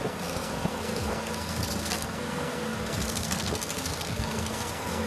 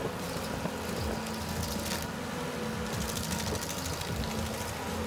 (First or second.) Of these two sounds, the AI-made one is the first